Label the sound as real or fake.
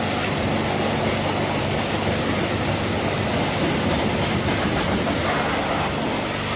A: real